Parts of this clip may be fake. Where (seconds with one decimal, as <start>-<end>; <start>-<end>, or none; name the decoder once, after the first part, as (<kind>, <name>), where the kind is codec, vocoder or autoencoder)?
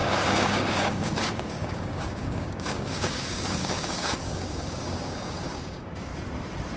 0.0-6.1 (codec, DAC)